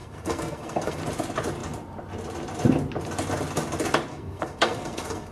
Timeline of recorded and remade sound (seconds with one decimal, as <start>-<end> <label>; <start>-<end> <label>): 0.0-1.0 remade; 1.0-4.1 recorded; 4.1-5.3 remade